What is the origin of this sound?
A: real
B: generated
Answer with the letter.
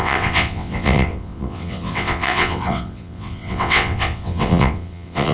B